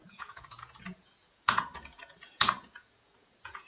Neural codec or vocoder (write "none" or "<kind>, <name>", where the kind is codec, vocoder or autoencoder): vocoder, Vocos